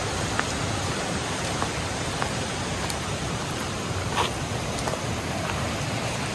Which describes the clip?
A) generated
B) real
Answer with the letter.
A